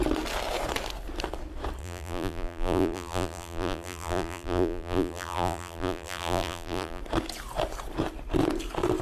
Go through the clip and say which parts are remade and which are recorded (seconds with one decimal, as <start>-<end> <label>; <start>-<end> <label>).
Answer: 0.0-1.8 recorded; 1.8-7.0 remade; 7.0-9.0 recorded